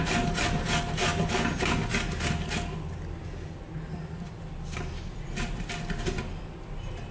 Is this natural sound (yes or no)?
yes